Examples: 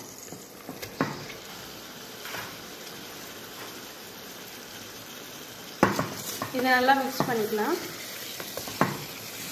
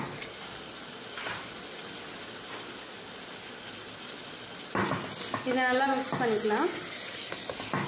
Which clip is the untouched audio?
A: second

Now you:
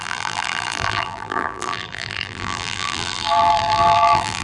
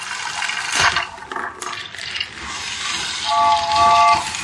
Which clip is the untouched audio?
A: second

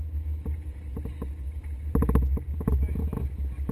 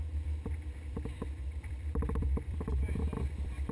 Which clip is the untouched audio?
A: first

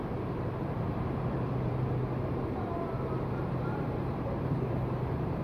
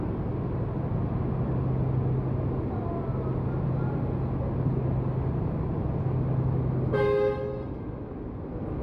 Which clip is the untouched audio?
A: second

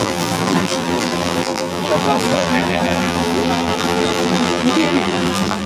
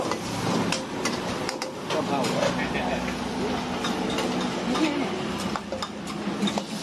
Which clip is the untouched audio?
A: second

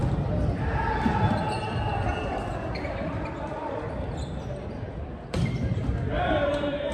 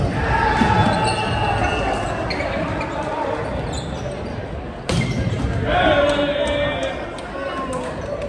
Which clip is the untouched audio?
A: second